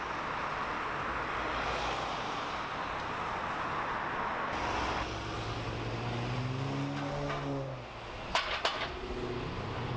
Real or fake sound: real